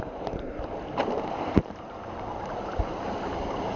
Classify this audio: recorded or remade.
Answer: remade